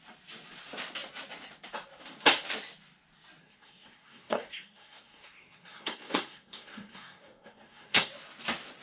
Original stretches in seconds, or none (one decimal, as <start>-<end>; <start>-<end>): 0.0-3.4; 8.1-8.8